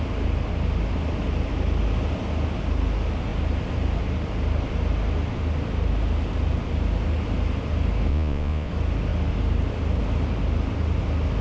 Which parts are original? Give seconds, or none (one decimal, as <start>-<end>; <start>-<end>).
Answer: 0.0-8.1; 8.7-11.4